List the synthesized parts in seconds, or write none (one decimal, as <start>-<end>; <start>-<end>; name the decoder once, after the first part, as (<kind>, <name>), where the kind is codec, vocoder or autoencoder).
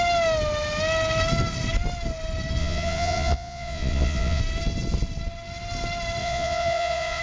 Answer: 2.6-4.4 (vocoder, Vocos); 6.2-7.2